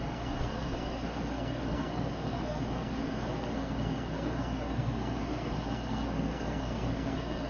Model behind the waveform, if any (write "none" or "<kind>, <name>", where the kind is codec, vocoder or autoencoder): codec, SNAC